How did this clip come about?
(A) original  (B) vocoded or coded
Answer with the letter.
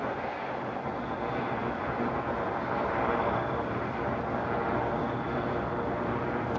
A